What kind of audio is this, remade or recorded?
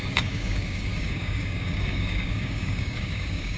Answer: remade